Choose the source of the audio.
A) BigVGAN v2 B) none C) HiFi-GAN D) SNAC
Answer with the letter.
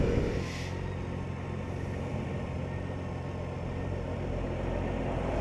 B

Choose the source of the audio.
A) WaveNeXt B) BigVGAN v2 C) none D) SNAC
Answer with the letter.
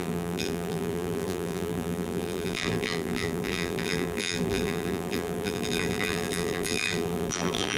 B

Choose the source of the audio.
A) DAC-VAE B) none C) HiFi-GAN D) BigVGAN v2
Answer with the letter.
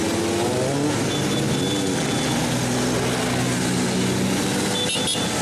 B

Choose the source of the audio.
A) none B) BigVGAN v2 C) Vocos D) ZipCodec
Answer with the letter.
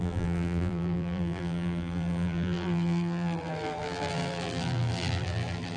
B